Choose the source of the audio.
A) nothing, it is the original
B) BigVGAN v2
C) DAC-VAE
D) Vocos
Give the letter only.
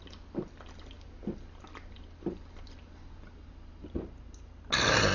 A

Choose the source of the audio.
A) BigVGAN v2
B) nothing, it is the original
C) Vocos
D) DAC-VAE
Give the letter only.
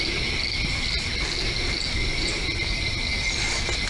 B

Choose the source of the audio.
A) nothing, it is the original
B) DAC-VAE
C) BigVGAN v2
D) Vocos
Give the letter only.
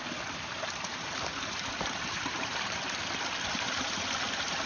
C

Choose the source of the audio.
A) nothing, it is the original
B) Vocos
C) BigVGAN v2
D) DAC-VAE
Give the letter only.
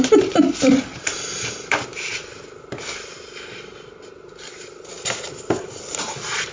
A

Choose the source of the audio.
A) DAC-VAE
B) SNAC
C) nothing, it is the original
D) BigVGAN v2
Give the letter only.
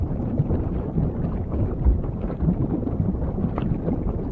D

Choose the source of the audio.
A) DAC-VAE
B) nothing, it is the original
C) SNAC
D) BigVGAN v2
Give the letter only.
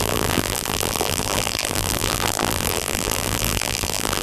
D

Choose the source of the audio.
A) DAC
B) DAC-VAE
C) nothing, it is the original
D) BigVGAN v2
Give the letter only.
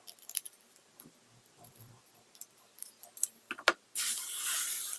D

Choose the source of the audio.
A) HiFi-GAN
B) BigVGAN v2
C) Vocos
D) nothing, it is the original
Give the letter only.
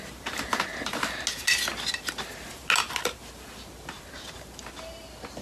D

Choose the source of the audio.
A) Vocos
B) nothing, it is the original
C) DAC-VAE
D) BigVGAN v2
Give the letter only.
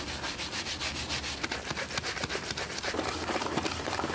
D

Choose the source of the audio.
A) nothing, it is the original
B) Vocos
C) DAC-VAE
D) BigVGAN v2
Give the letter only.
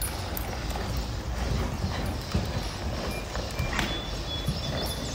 A